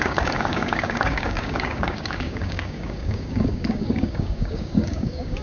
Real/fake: fake